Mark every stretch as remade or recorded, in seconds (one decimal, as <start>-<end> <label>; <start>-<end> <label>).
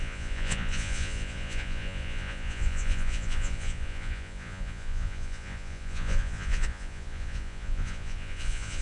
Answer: 0.0-8.8 remade